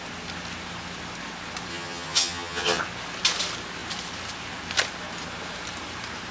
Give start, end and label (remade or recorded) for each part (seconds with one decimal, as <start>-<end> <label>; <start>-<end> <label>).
0.0-1.7 recorded; 1.7-2.8 remade; 2.8-6.3 recorded